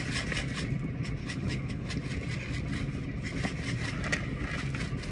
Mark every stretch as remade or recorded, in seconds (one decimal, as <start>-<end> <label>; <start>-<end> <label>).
0.0-1.2 recorded; 1.2-1.9 remade; 1.9-5.1 recorded